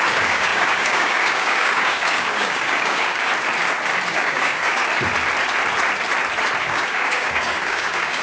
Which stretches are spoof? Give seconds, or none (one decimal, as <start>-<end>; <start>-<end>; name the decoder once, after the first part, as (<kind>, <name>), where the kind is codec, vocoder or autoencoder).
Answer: 0.0-3.3 (codec, DAC); 4.1-4.8; 6.6-8.2